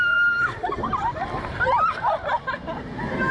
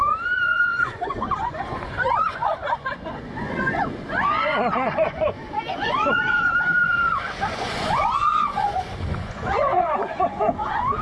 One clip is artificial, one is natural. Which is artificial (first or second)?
second